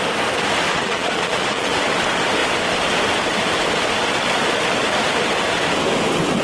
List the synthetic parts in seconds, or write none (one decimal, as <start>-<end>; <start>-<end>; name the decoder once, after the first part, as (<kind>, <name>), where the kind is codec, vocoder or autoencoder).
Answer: 0.7-1.7 (vocoder, Vocos)